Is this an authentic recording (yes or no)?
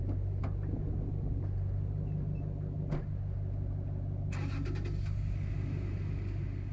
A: yes